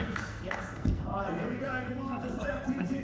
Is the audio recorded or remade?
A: remade